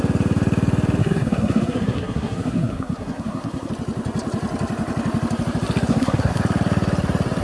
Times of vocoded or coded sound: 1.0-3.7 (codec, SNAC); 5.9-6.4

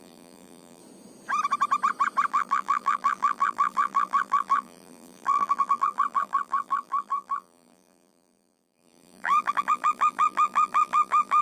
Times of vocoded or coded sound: 0.0-0.8 (vocoder, BigVGAN v2); 2.3-11.4

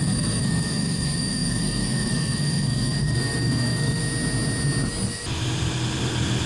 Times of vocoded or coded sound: 0.0-4.0 (codec, SNAC)

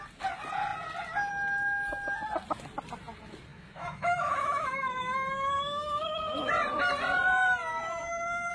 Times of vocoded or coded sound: 3.5-6.5 (autoencoder, DAC-VAE); 7.7-8.5

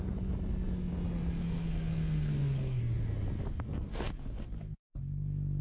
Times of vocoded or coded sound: 1.4-2.8 (codec, SNAC); 3.4-4.8

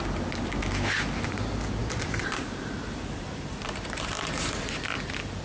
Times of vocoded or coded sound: 1.8-4.8 (vocoder, BigVGAN v2)

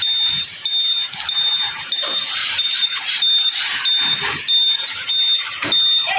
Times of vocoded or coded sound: 2.4-5.1 (vocoder, BigVGAN v2)